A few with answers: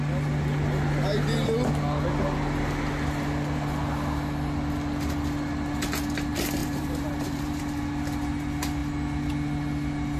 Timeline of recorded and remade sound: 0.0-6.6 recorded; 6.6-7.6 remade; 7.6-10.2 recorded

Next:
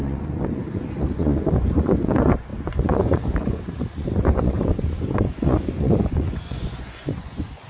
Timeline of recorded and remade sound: 0.0-7.7 remade

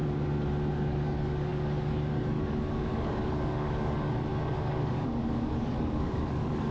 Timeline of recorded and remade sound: 0.0-0.7 recorded; 0.7-6.7 remade

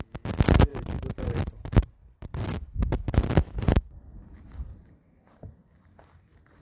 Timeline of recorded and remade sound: 0.0-0.7 recorded; 0.7-2.7 remade; 2.7-3.4 recorded; 3.4-5.5 remade; 5.5-6.6 recorded

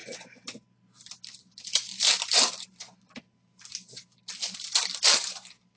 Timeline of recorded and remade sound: 0.0-5.8 recorded